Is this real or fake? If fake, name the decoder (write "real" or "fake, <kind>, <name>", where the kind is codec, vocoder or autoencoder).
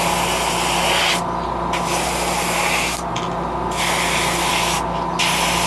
real